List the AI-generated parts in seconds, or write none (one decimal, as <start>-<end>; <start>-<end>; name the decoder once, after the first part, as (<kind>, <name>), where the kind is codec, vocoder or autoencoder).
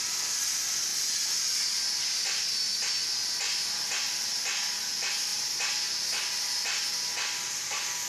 none